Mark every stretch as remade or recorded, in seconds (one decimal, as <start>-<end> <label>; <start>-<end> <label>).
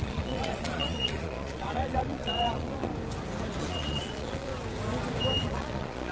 0.0-2.9 remade; 2.9-3.6 recorded; 3.6-4.5 remade; 4.5-5.4 recorded; 5.4-6.1 remade